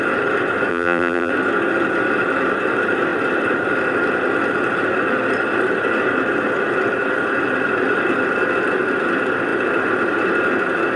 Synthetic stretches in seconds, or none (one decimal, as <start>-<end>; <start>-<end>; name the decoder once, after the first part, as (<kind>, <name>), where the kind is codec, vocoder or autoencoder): 0.7-1.3 (vocoder, BigVGAN v2)